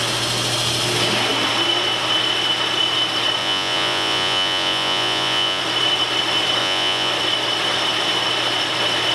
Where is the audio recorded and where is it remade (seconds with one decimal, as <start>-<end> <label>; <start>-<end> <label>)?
0.0-3.4 recorded; 3.4-5.6 remade; 5.6-6.6 recorded; 6.6-7.1 remade; 7.1-9.1 recorded